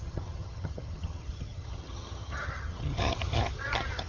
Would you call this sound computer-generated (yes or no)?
yes